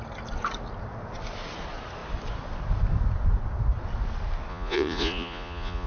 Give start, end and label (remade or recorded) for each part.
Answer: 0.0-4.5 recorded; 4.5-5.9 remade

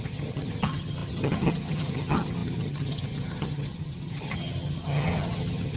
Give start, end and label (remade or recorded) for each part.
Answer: 0.0-5.8 remade

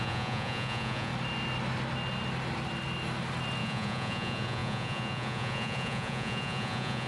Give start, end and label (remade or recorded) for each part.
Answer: 0.0-1.1 remade; 1.1-3.6 recorded; 3.6-7.1 remade

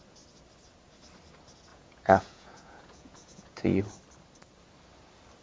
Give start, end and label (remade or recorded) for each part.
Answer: 0.0-1.7 recorded; 1.7-3.8 remade; 3.8-5.4 recorded